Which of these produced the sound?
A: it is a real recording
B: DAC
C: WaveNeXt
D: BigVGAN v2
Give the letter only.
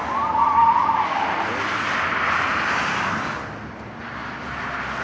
A